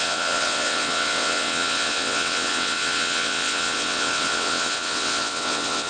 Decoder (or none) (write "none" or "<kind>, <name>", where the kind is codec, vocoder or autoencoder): vocoder, WaveNeXt